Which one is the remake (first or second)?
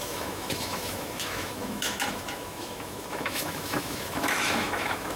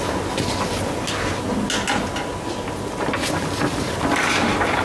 first